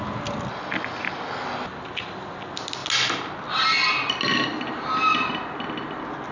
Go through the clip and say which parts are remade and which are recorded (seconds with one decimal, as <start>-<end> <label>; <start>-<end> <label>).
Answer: 0.0-6.3 recorded